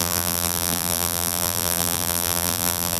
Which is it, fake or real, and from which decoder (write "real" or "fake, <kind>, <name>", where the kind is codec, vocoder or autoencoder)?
fake, vocoder, BigVGAN v2